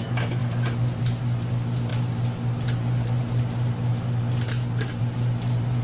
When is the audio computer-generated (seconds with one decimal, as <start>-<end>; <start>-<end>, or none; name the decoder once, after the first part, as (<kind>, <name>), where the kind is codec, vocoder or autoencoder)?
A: none